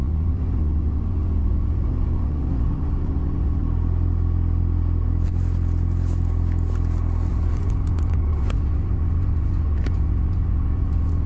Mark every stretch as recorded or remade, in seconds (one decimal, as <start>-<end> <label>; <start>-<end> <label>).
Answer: 0.0-3.6 remade; 3.6-7.3 recorded; 7.3-11.3 remade